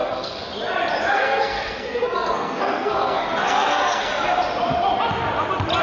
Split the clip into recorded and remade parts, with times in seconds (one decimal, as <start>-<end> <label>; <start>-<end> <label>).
0.0-0.5 remade; 0.5-1.1 recorded; 1.1-4.1 remade; 4.1-5.8 recorded